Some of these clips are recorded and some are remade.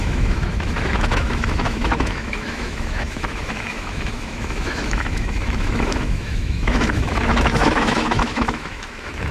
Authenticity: remade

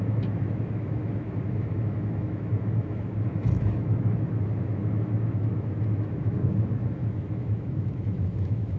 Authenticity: remade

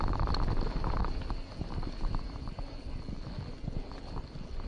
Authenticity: recorded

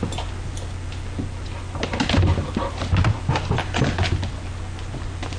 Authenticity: recorded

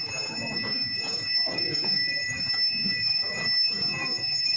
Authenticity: remade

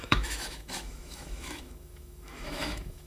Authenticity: remade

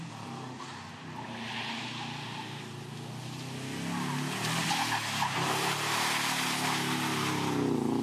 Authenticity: recorded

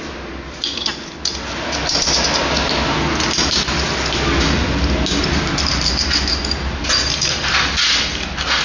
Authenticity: recorded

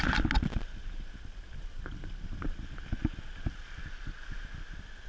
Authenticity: recorded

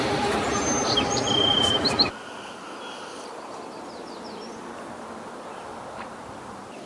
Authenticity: recorded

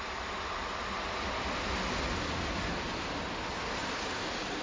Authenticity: recorded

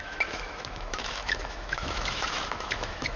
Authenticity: remade